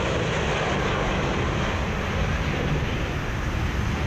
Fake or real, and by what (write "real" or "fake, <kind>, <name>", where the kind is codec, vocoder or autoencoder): real